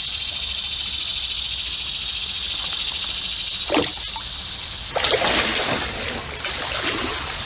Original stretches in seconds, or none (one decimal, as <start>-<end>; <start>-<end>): 0.0-7.5